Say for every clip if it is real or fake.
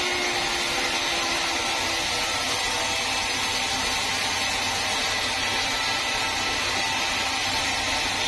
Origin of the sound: real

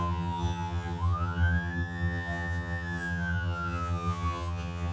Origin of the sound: fake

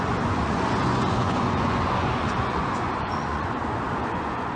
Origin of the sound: fake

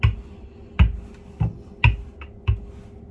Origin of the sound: real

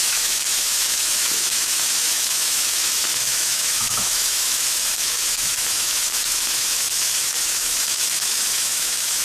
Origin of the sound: fake